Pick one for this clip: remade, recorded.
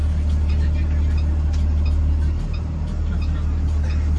recorded